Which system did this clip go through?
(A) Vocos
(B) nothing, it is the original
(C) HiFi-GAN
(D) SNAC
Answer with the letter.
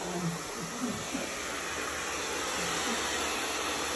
B